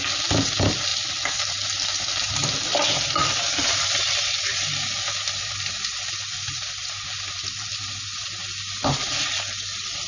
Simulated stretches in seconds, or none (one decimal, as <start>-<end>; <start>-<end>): 0.9-2.1; 3.2-6.9